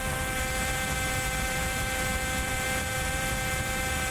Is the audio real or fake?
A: fake